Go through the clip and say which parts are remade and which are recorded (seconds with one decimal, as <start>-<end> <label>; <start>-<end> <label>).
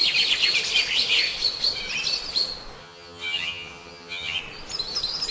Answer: 0.0-2.8 recorded; 2.8-4.4 remade; 4.4-5.3 recorded